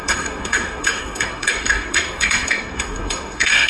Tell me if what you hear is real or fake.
fake